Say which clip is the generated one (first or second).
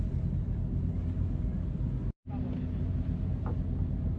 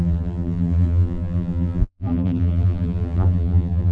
second